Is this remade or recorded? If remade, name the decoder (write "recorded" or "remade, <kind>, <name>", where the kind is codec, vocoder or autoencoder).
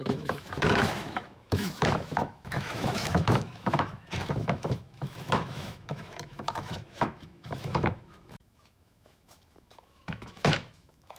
remade, autoencoder, DAC-VAE